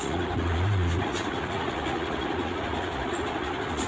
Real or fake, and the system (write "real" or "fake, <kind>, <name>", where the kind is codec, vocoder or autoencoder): fake, vocoder, Vocos